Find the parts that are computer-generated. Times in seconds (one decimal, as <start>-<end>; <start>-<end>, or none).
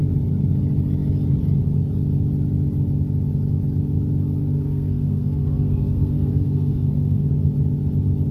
4.4-7.3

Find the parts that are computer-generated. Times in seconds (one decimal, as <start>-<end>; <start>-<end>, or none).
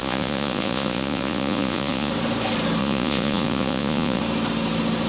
0.0-2.1; 2.8-4.2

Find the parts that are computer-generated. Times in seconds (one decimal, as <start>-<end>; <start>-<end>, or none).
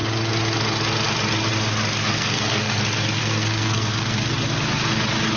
2.1-2.8; 3.2-4.3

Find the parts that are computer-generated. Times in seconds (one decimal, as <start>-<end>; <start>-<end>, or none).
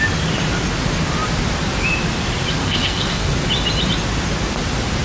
2.6-3.3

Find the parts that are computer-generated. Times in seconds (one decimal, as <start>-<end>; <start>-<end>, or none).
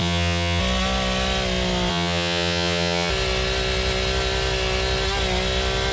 0.0-0.6; 1.9-3.1